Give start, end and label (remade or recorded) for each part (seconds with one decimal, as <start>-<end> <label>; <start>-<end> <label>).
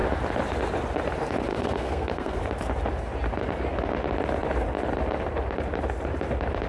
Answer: 0.0-1.5 recorded; 1.5-2.4 remade; 2.4-6.7 recorded